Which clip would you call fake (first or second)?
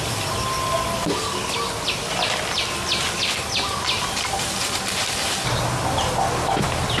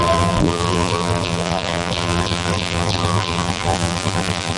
second